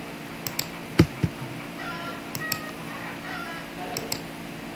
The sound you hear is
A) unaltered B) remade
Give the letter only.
A